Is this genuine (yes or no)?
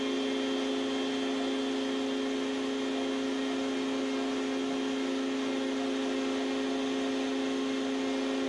yes